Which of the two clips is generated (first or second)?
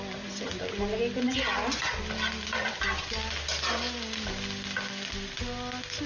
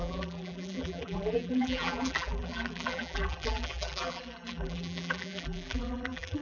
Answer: second